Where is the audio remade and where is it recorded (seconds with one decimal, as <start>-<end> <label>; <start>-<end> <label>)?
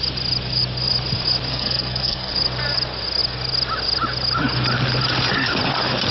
0.0-1.5 recorded; 1.5-2.3 remade; 2.3-6.1 recorded